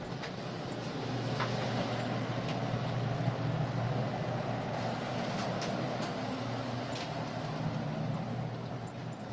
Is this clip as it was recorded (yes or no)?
yes